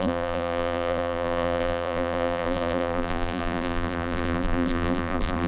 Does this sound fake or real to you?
fake